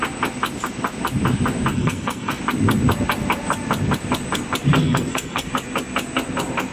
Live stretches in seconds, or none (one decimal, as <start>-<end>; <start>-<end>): 0.0-1.7; 2.4-4.8; 5.5-6.7